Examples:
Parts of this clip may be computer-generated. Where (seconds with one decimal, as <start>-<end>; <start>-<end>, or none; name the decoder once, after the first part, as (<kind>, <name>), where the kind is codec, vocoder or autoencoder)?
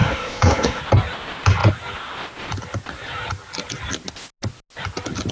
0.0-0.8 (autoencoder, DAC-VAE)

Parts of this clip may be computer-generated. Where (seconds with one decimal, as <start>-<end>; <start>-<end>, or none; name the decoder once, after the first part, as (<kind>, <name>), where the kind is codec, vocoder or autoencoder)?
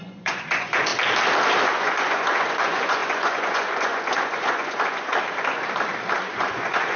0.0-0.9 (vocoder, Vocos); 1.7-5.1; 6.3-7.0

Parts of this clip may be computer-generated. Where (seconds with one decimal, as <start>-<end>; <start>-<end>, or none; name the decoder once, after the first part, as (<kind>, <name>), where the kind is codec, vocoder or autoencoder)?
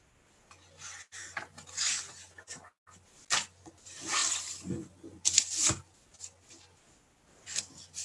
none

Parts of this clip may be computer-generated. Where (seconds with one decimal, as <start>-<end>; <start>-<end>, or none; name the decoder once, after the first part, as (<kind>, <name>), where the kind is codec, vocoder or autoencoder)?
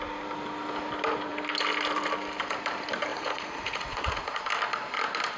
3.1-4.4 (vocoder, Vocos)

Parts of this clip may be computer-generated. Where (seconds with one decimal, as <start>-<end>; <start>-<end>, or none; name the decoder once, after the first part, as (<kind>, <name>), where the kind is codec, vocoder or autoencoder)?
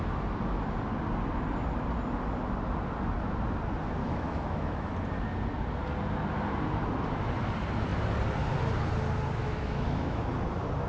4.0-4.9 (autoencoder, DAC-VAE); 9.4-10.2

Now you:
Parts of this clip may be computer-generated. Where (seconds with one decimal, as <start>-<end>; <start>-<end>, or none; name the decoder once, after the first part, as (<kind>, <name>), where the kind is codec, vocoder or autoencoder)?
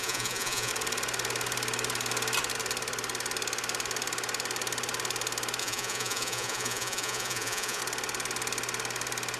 0.0-0.7 (vocoder, Vocos); 5.6-7.8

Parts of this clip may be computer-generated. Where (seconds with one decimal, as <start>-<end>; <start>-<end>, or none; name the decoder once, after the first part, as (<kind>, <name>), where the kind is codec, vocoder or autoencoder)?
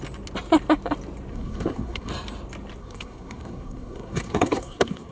1.3-2.1 (codec, SNAC); 2.8-5.1